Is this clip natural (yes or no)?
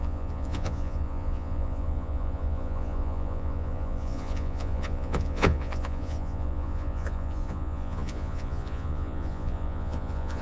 no